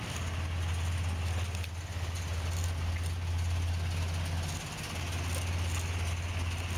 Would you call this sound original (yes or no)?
yes